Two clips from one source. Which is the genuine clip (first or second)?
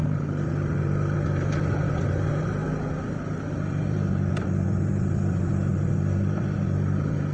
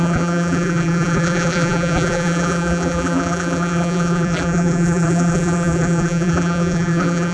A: first